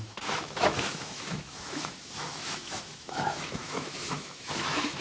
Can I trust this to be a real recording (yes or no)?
no